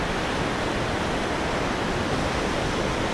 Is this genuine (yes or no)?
yes